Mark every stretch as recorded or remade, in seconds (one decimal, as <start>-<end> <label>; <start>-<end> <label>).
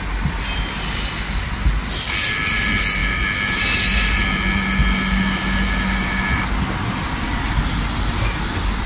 0.0-8.9 recorded